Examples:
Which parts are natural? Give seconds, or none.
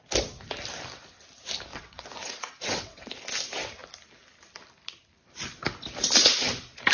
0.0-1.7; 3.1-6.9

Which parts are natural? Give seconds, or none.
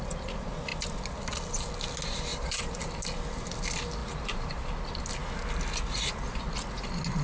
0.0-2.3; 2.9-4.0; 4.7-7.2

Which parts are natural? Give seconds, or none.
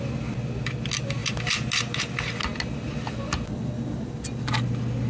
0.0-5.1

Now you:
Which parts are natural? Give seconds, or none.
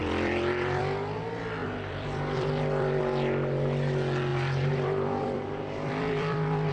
0.8-1.6; 3.0-4.3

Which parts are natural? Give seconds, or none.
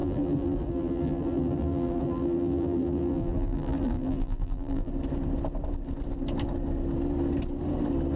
4.9-8.2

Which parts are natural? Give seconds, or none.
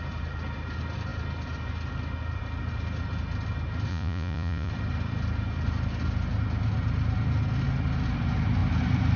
0.0-3.9; 4.7-9.2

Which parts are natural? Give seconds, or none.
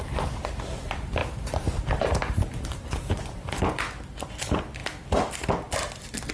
0.0-1.2; 3.2-6.3